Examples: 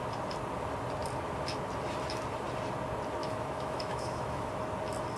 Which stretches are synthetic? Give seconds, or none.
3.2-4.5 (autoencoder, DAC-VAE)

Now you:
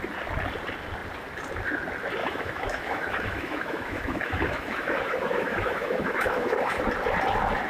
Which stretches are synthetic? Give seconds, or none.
2.2-6.8 (autoencoder, DAC-VAE)

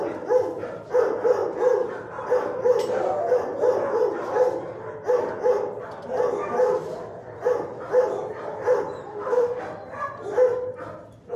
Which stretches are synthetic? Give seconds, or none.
9.1-9.6 (autoencoder, DAC-VAE)

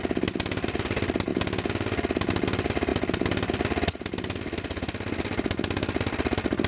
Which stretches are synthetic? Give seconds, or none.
none

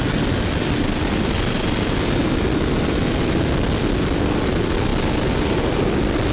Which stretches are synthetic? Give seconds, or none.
none

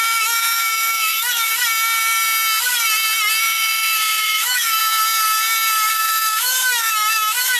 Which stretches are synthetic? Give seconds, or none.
0.0-1.5 (autoencoder, DAC-VAE); 3.4-4.8; 5.9-7.6

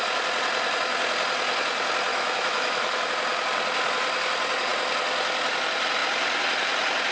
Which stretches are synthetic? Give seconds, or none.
2.1-3.1 (autoencoder, DAC-VAE)